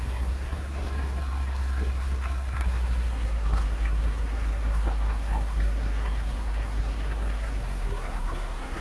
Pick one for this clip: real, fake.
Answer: fake